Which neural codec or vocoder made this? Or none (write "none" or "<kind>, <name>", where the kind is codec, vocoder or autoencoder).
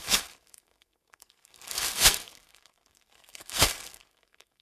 codec, SNAC